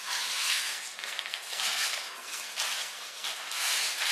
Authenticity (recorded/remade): remade